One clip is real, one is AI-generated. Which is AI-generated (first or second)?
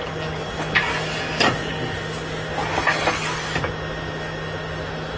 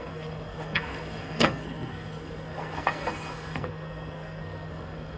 second